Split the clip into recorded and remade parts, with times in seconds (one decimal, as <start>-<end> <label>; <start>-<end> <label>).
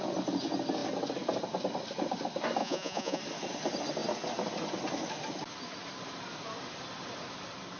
0.0-2.6 recorded; 2.6-3.2 remade; 3.2-7.8 recorded